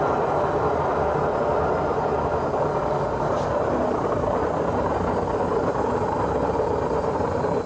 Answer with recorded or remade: recorded